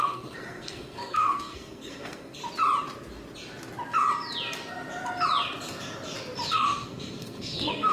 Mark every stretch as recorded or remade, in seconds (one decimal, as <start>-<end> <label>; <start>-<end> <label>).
0.0-2.4 remade; 2.4-6.5 recorded; 6.5-7.9 remade